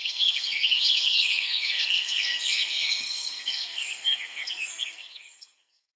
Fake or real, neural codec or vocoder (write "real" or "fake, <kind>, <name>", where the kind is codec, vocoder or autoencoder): fake, codec, SNAC